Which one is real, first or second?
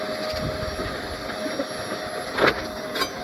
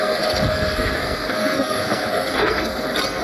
first